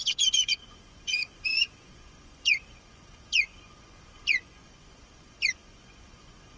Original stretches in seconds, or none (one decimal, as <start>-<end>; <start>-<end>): none